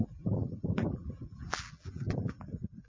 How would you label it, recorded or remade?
remade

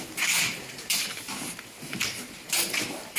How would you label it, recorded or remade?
remade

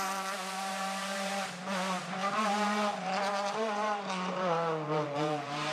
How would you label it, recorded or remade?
remade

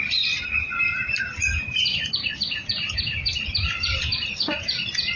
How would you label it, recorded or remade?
remade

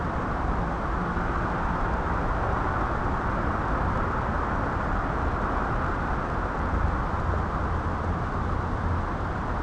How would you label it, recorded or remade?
recorded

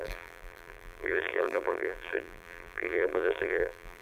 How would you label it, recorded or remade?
remade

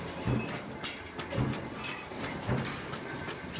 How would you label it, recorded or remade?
recorded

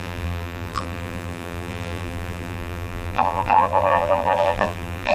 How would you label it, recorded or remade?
remade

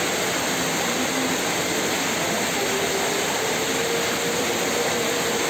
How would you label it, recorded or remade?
recorded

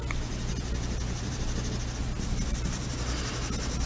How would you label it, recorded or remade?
recorded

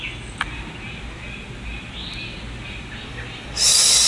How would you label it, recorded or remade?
recorded